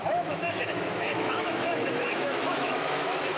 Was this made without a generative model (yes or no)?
no